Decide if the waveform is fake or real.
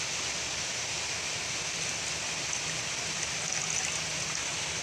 real